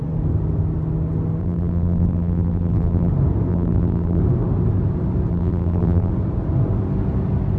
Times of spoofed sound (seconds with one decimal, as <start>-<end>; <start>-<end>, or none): 1.4-3.1; 3.5-4.2; 5.3-6.1